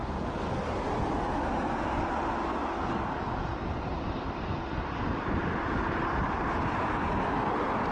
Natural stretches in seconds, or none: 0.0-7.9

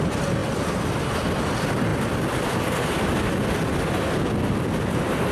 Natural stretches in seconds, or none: 0.0-5.3

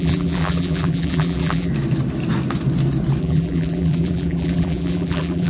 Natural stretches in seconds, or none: 1.7-3.2

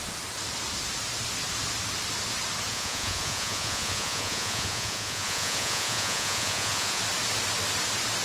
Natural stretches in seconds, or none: 0.0-2.7; 7.0-8.2

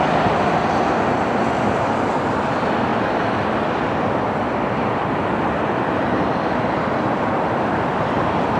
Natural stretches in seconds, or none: none